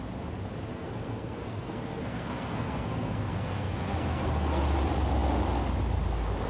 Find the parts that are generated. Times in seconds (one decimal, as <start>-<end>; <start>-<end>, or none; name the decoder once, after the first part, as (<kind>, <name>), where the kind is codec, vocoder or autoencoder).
0.7-4.6 (codec, SNAC)